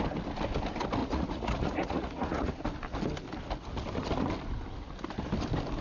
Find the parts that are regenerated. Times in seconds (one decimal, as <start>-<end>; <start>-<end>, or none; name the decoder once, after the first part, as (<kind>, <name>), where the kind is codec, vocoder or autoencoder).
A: 1.0-2.5 (vocoder, Vocos)